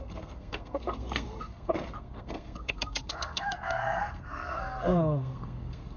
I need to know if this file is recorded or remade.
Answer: remade